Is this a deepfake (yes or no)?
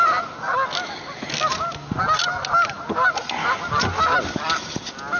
no